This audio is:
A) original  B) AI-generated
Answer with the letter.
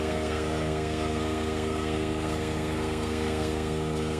B